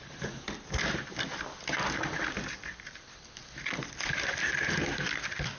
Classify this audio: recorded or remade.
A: recorded